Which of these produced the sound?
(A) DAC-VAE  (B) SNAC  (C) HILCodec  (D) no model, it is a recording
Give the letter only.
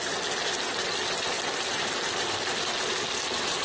D